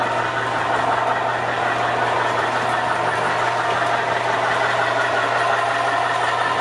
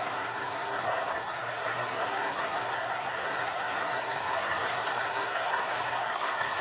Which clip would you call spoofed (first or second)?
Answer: second